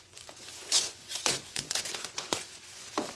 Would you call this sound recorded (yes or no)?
no